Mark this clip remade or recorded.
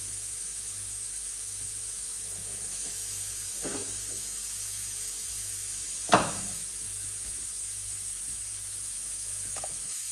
remade